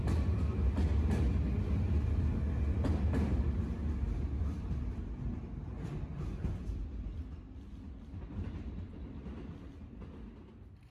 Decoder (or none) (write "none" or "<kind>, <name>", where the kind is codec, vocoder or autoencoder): none